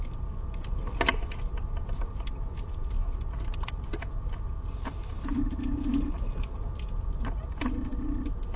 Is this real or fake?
real